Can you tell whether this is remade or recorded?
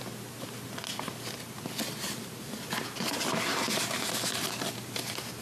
recorded